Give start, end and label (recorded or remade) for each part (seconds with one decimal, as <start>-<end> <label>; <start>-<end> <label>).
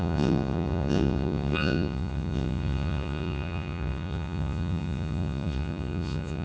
0.0-6.4 remade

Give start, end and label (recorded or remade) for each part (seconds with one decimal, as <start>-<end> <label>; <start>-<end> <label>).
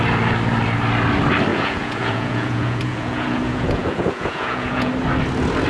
0.0-1.5 recorded; 1.5-4.9 remade; 4.9-5.7 recorded